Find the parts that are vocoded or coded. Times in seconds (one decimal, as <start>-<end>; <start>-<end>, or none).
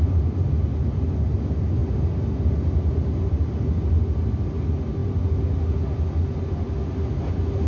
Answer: none